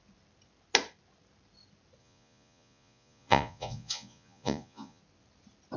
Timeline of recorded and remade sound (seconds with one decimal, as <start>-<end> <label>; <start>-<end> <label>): 0.0-2.0 recorded; 2.0-5.0 remade; 5.0-5.8 recorded